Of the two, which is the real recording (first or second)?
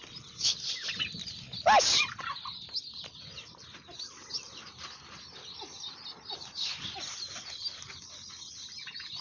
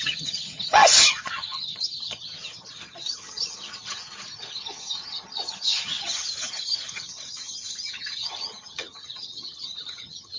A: first